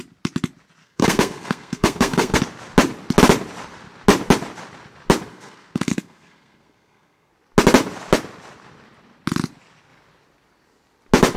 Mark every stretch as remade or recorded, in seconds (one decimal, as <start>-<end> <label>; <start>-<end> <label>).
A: 0.0-0.8 recorded; 0.8-2.4 remade; 2.4-5.3 recorded; 5.3-7.3 remade; 7.3-11.4 recorded